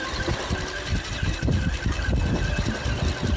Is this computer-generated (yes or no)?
no